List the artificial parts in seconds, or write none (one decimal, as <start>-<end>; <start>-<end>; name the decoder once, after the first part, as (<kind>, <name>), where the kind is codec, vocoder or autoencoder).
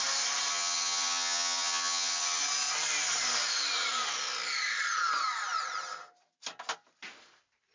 0.5-2.4 (vocoder, HiFi-GAN)